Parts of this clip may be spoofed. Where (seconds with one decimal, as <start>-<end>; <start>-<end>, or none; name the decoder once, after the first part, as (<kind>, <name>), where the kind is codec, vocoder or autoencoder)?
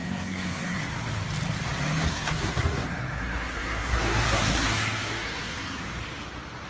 0.0-0.8 (codec, SNAC); 2.1-5.8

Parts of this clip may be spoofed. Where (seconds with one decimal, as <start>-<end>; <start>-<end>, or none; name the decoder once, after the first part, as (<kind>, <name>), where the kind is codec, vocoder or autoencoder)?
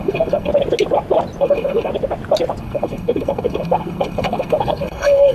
0.0-0.5 (codec, SNAC); 1.4-1.9; 2.6-5.3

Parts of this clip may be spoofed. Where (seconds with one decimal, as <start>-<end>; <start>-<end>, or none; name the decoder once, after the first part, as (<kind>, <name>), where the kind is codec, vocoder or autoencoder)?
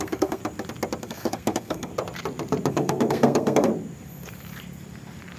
0.0-0.4 (codec, SNAC); 1.0-1.9; 2.7-3.7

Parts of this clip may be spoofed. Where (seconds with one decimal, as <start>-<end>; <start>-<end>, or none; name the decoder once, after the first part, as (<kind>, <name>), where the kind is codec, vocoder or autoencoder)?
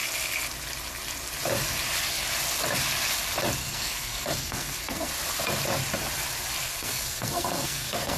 3.6-5.1 (codec, SNAC); 6.6-8.2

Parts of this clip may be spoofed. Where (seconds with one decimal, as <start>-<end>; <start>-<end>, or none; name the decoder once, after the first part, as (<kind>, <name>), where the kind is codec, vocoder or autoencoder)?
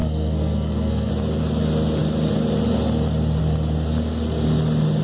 0.0-1.1 (codec, SNAC)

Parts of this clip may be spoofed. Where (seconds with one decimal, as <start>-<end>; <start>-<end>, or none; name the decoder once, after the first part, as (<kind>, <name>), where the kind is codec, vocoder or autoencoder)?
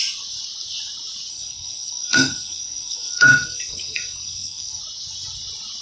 1.3-4.8 (codec, SNAC)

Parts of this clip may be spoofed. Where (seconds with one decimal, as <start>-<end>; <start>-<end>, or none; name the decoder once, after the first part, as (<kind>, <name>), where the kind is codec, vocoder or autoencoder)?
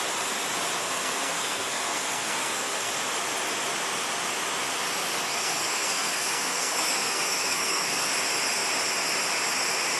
0.8-2.9 (codec, SNAC); 5.3-8.1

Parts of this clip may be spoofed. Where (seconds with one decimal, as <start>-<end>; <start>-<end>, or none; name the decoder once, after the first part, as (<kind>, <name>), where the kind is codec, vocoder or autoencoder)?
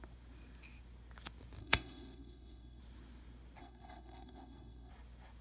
1.6-2.8 (codec, SNAC); 3.6-4.9